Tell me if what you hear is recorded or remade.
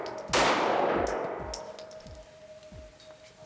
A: recorded